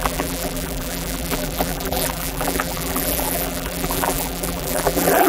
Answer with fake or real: fake